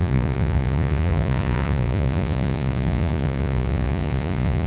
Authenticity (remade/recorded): remade